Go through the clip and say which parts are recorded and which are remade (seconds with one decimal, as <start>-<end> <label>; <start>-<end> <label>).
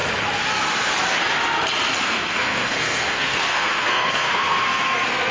0.0-2.0 recorded; 2.0-5.3 remade